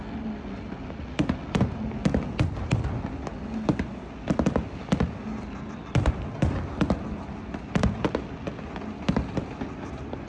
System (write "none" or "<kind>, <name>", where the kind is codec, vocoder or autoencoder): none